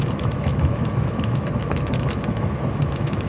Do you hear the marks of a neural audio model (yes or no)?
yes